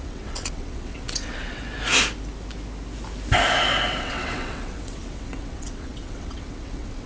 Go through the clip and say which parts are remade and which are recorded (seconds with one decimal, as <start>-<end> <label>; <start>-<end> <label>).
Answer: 0.0-1.6 remade; 1.6-4.0 recorded; 4.0-7.1 remade